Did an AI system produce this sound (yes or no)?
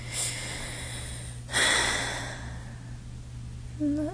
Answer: no